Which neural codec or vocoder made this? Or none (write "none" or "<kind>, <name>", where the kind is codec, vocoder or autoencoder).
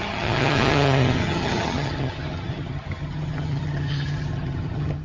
vocoder, HiFi-GAN